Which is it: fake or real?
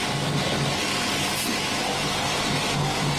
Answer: real